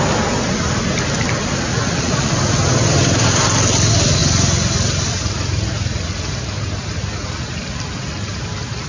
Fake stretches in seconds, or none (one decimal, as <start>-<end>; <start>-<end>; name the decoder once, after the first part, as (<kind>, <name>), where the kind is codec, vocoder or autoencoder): 1.7-2.3 (vocoder, Vocos)